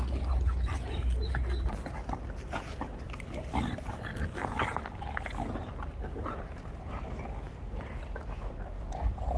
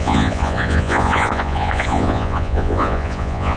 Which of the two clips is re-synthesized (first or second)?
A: second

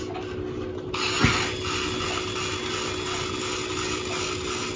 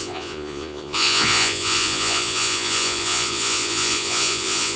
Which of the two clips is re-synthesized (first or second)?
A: second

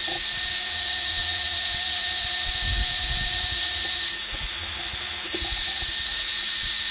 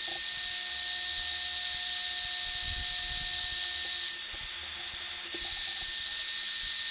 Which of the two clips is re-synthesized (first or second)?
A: first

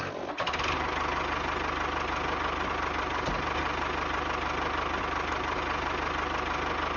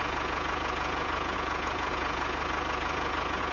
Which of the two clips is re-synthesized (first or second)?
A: second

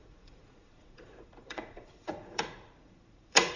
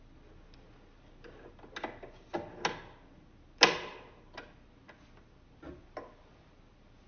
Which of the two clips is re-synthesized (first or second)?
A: first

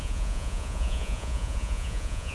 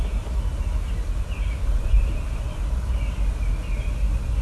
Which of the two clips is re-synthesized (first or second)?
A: first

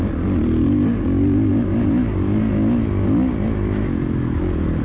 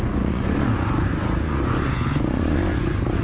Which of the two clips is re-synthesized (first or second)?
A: second